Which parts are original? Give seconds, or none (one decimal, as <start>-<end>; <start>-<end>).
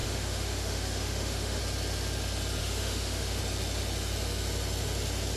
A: 1.6-2.6; 3.4-5.4